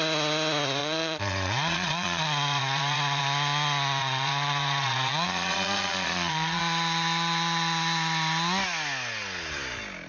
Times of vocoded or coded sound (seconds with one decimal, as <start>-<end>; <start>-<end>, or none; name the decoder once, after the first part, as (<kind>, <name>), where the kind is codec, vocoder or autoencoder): 0.8-3.2 (vocoder, Vocos); 4.0-6.6

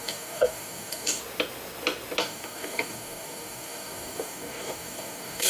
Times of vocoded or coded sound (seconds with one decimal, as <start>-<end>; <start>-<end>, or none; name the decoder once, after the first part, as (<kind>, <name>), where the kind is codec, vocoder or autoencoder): 0.0-1.2 (codec, DAC); 2.2-5.5